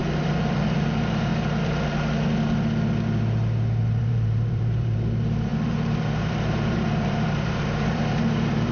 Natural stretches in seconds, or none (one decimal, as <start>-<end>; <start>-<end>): 1.3-3.8